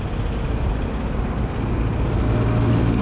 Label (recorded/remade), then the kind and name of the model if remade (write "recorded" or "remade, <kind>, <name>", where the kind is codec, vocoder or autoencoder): recorded